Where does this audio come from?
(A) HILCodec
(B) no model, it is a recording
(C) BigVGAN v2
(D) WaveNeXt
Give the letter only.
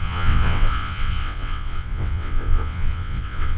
D